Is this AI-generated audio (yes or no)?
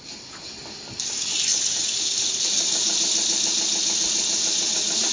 no